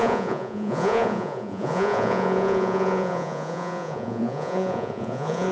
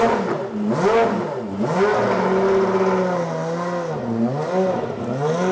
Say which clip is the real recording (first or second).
second